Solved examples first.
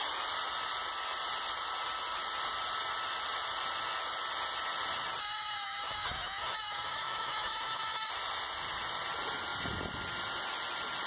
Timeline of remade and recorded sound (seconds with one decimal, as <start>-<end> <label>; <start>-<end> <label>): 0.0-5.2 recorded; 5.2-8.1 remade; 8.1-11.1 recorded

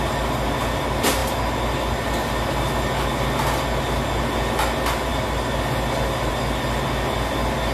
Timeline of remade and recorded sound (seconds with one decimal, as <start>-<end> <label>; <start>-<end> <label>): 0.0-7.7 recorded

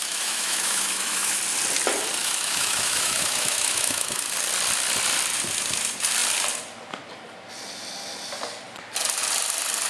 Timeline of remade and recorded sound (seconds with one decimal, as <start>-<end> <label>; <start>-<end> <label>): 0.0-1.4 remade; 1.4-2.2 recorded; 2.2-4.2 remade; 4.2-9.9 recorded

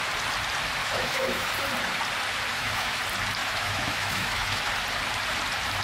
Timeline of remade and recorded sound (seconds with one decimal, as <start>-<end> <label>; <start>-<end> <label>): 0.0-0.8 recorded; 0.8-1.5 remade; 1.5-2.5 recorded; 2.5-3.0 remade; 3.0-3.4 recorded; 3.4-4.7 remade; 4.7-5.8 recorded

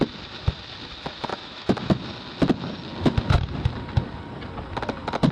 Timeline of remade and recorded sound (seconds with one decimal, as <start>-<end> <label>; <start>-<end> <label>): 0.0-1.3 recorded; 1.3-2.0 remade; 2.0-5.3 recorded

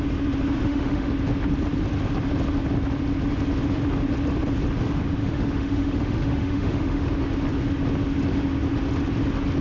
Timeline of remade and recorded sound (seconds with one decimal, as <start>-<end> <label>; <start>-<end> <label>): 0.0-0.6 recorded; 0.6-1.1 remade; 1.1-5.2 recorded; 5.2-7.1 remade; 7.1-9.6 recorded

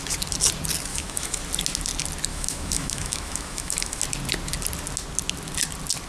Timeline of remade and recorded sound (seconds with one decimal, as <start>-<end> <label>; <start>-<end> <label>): 0.0-0.9 recorded; 0.9-1.4 remade; 1.4-2.3 recorded; 2.3-4.0 remade; 4.0-6.1 recorded